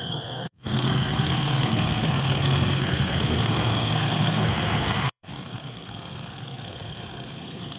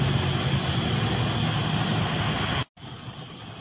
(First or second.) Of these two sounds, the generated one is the first